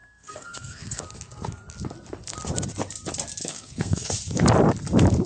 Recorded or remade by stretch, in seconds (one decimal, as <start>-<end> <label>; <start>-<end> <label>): 0.0-1.0 remade; 1.0-3.4 recorded; 3.4-4.1 remade; 4.1-5.3 recorded